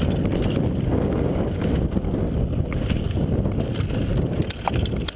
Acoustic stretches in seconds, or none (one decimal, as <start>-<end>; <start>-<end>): 0.0-0.9; 1.6-5.2